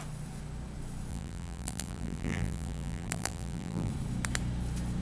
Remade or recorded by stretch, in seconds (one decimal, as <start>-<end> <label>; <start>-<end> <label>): 0.0-1.1 recorded; 1.1-3.9 remade; 3.9-5.0 recorded